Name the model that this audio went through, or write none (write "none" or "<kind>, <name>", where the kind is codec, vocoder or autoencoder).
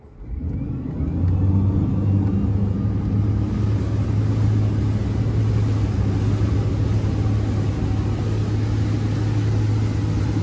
none